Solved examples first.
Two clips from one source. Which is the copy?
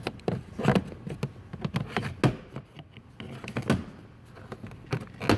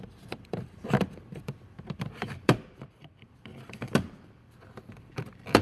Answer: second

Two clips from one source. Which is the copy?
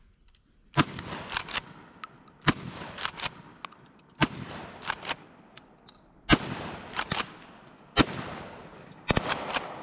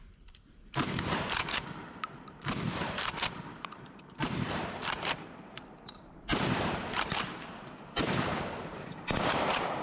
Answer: second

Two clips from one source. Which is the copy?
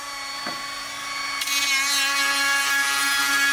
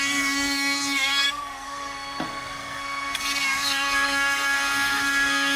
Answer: second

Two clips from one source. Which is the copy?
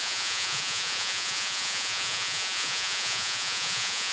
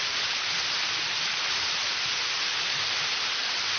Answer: first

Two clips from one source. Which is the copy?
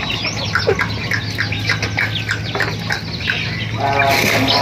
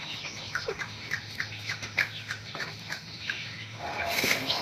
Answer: second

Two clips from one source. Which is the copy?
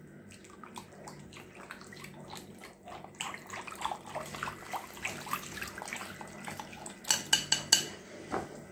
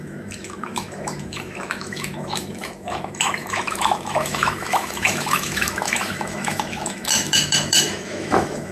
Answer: second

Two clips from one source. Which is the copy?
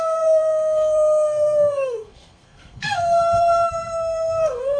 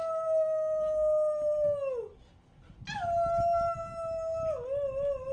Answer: first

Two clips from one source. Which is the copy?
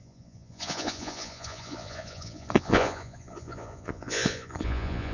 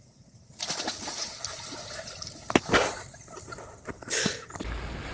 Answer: first